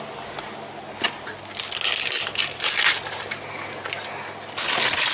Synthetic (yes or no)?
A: no